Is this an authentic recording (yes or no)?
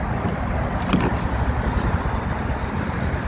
yes